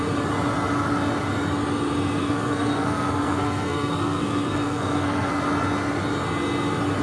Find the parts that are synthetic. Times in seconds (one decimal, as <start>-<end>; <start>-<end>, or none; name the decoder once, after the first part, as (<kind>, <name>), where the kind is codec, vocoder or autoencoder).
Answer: 2.2-5.3 (codec, SNAC)